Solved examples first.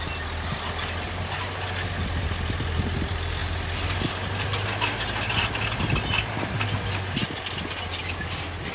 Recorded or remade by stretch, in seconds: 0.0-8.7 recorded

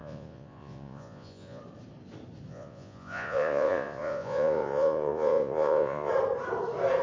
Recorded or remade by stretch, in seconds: 0.0-1.6 remade; 1.6-2.5 recorded; 2.5-6.1 remade; 6.1-7.0 recorded

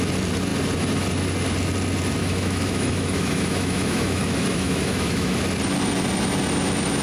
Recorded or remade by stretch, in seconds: 0.0-2.2 recorded; 2.2-5.4 remade; 5.4-7.0 recorded

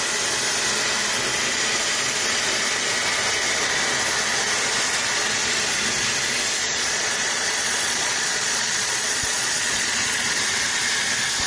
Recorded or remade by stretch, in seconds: 0.0-6.6 recorded; 6.6-10.4 remade; 10.4-11.5 recorded

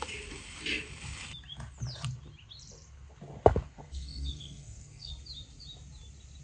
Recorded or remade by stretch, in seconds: 0.0-3.7 recorded; 3.7-5.1 remade; 5.1-6.4 recorded